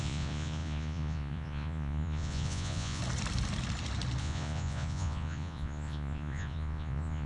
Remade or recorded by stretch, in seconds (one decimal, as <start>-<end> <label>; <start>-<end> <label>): 0.0-3.0 remade; 3.0-4.2 recorded; 4.2-7.3 remade